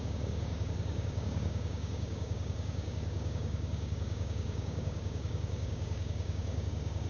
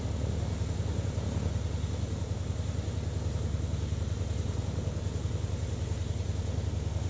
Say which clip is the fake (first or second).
first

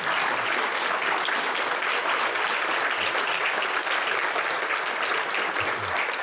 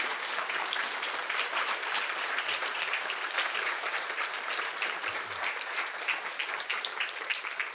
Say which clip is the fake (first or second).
second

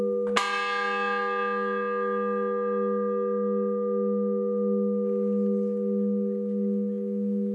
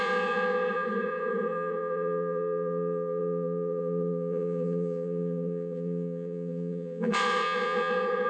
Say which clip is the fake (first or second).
second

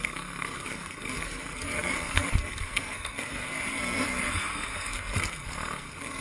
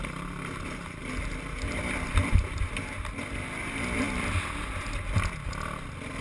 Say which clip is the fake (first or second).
first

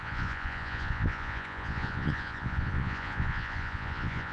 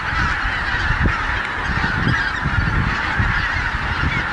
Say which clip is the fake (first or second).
first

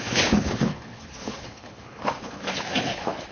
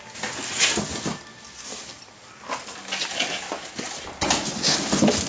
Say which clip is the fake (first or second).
first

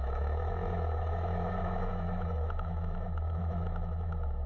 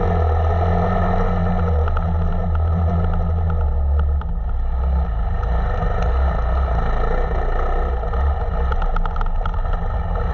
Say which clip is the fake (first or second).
first